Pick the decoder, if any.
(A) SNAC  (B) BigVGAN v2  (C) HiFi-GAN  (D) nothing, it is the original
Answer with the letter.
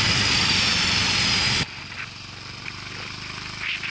D